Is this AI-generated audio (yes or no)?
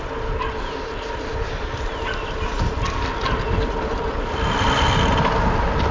no